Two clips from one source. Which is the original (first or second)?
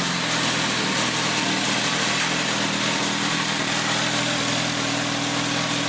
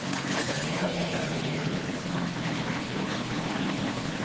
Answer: first